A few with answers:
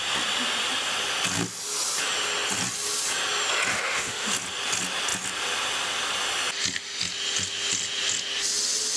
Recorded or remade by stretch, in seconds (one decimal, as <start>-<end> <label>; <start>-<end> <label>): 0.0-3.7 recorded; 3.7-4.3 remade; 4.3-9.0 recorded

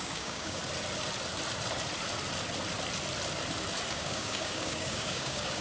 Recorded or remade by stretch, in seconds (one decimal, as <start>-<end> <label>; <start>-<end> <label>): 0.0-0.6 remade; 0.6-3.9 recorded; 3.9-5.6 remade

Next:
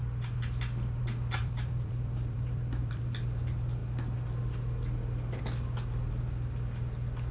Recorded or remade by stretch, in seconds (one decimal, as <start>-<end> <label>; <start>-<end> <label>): 0.0-1.4 recorded; 1.4-3.0 remade; 3.0-7.3 recorded